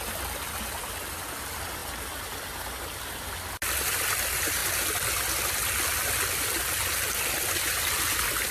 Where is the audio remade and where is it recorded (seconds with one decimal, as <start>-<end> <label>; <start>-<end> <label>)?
0.0-8.5 recorded